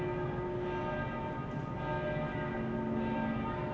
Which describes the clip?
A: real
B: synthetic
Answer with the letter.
A